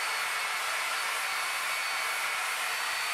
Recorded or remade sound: recorded